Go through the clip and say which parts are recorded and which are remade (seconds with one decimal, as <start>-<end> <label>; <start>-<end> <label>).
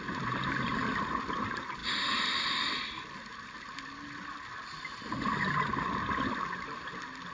0.0-7.3 recorded